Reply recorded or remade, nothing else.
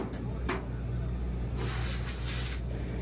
recorded